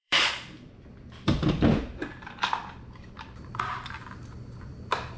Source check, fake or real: fake